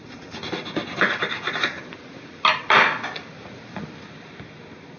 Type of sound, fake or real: real